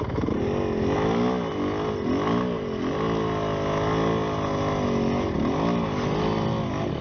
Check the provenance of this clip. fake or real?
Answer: real